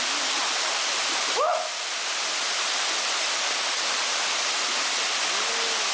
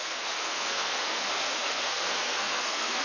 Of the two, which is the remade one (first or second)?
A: second